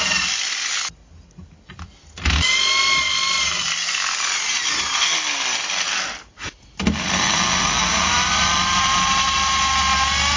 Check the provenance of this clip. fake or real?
real